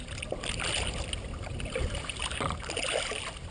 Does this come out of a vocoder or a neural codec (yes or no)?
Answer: no